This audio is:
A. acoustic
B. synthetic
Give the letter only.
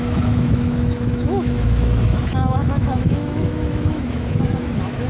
B